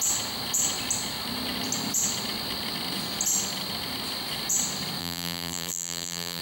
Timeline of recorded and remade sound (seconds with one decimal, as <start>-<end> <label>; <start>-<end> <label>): 0.0-5.0 recorded; 5.0-6.4 remade